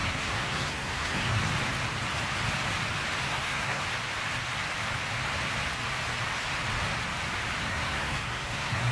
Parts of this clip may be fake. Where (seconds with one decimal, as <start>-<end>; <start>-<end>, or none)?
0.0-1.4; 3.3-3.8; 7.6-8.9